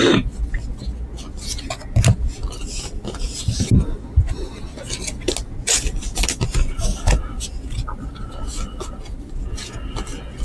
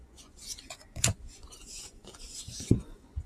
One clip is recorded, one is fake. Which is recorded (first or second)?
first